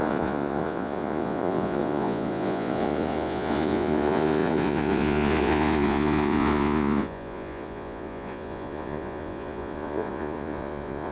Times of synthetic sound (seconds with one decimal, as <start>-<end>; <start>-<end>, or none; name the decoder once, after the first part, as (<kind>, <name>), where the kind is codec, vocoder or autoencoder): 0.0-11.1 (vocoder, Vocos)